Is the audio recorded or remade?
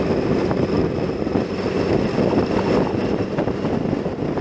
recorded